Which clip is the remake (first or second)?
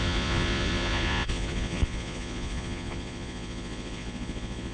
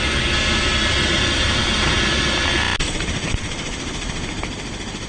first